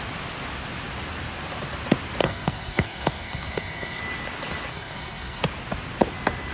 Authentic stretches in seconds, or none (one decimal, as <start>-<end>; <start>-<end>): 0.0-2.2; 4.0-4.7; 5.4-6.5

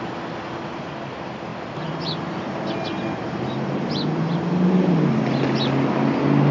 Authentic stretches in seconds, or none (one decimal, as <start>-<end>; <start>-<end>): 0.0-6.5

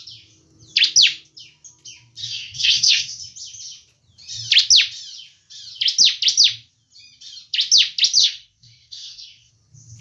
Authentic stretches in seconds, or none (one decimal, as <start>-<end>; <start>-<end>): 0.0-2.2; 3.2-8.2; 9.5-10.0

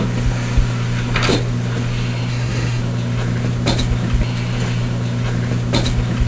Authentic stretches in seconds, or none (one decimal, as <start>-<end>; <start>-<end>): 0.0-2.3; 2.8-6.3

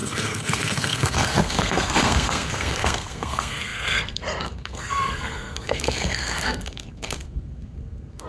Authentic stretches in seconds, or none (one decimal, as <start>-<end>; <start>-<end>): none

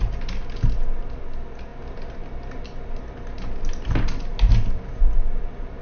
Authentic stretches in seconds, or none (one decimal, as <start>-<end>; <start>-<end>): 0.0-5.8

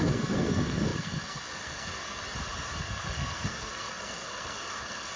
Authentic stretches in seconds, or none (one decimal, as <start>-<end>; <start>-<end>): 2.2-2.8

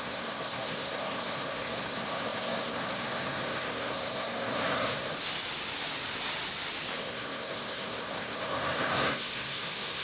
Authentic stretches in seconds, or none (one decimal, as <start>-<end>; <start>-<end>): 5.1-7.0